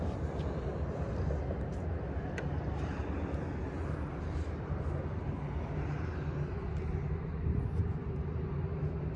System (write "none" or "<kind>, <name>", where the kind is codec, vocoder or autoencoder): none